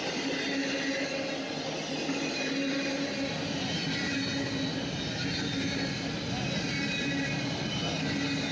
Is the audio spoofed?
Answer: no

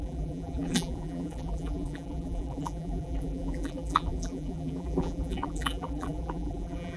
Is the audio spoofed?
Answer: yes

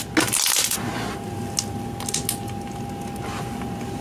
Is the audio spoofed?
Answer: no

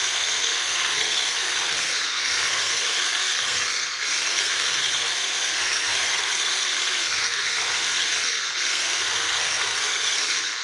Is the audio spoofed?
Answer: yes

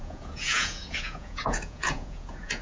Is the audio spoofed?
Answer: yes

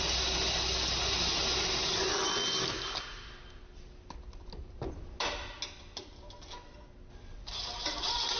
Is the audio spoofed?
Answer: no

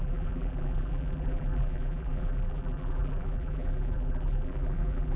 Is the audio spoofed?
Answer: yes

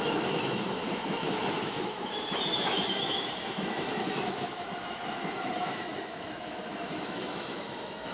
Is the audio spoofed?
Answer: yes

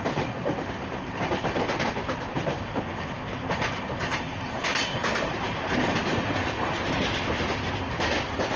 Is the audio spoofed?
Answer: no